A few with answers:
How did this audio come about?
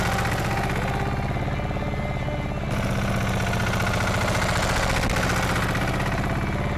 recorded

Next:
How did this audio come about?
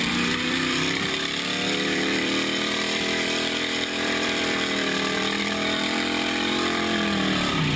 remade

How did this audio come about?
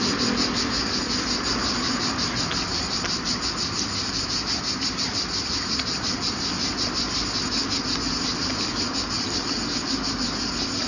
recorded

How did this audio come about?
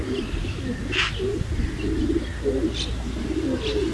recorded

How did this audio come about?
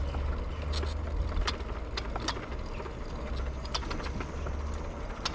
recorded